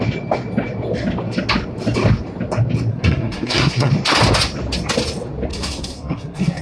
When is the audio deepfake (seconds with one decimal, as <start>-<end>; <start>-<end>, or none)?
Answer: 2.9-3.9; 5.5-6.6